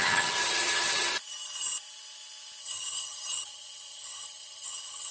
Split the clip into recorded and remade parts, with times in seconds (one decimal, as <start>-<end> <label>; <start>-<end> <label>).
0.0-1.1 remade; 1.1-2.6 recorded; 2.6-5.1 remade